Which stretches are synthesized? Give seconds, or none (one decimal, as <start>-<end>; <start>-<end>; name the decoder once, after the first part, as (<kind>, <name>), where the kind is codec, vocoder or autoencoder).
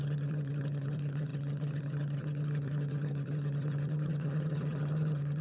0.0-5.4 (vocoder, HiFi-GAN)